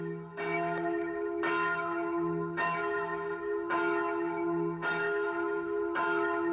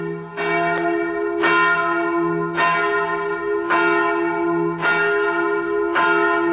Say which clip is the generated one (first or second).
first